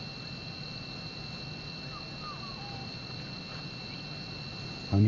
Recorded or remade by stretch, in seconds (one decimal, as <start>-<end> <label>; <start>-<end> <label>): 0.0-2.5 recorded; 2.5-3.4 remade; 3.4-5.1 recorded